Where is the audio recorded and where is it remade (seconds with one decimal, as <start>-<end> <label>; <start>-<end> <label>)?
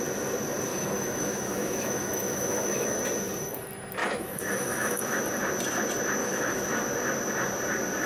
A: 0.0-0.7 recorded; 0.7-3.0 remade; 3.0-4.0 recorded; 4.0-5.2 remade; 5.2-6.2 recorded; 6.2-6.7 remade; 6.7-8.1 recorded